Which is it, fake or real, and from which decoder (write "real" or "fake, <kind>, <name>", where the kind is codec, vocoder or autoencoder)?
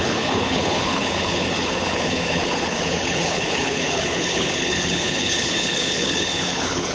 fake, codec, HILCodec